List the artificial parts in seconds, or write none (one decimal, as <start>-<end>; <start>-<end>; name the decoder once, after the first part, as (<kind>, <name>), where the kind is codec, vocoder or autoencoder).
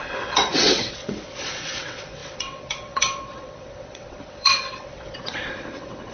0.0-6.1 (vocoder, WaveNeXt)